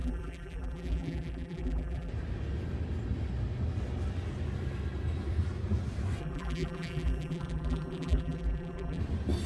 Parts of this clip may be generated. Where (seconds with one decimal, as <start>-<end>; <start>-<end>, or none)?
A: 0.0-2.1; 6.2-9.0